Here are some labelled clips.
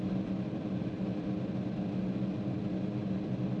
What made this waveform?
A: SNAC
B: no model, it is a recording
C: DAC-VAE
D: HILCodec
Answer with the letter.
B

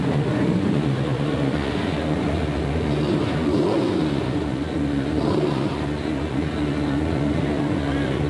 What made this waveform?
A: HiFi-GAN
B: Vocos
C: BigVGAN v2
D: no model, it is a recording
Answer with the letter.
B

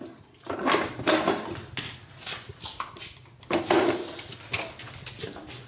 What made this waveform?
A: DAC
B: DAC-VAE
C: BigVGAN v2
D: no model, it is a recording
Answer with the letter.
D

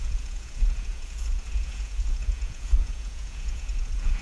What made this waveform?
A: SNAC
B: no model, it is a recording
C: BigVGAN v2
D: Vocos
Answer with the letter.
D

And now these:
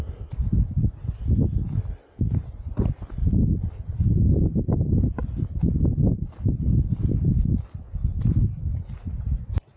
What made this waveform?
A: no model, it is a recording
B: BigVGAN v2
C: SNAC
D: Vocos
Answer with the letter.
A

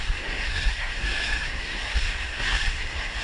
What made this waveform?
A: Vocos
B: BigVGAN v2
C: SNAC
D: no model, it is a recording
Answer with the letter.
C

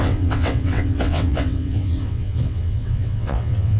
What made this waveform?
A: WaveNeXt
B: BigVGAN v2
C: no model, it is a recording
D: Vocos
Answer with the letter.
A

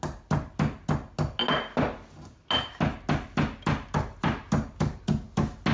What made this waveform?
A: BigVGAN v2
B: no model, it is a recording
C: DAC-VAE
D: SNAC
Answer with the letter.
B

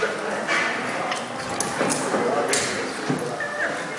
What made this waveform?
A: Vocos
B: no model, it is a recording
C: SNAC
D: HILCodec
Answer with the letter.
B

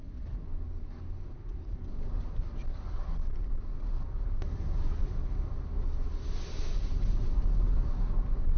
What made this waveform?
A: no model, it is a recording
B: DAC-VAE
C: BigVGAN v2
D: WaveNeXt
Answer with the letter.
A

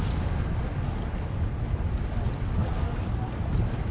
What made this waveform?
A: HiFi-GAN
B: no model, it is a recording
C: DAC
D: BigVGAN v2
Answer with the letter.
B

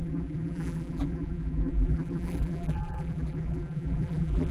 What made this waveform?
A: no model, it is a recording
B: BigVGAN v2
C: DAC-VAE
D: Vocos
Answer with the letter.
B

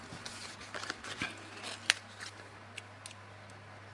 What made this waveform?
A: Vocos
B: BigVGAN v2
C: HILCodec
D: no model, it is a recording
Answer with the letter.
D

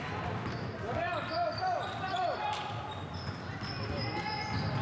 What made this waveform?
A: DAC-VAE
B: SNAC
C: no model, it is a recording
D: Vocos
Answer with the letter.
C